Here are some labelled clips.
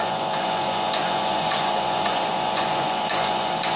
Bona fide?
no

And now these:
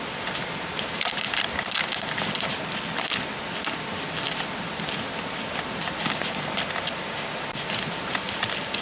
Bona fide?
yes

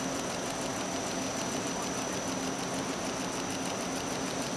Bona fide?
yes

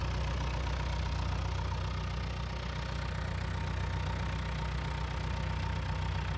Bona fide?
yes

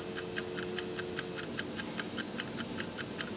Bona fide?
yes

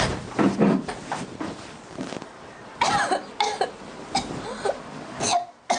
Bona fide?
yes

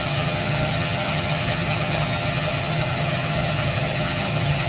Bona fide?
no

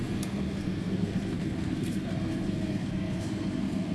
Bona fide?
no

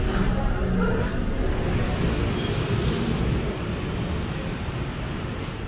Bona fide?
yes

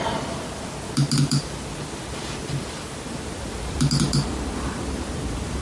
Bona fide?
yes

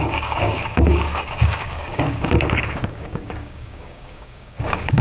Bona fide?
no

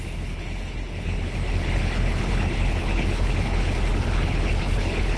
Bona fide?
no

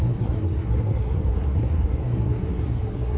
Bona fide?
no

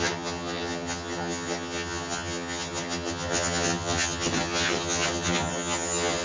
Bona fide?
no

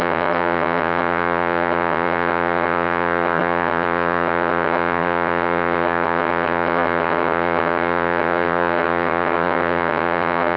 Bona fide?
no